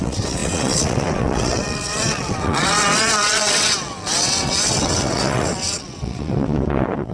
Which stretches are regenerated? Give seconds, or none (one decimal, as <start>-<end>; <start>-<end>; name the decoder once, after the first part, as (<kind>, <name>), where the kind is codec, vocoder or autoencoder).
0.0-7.1 (vocoder, WaveNeXt)